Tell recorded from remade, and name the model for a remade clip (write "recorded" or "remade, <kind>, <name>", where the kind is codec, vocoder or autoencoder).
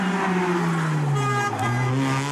recorded